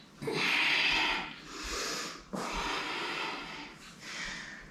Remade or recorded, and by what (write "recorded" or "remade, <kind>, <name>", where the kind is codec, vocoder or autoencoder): recorded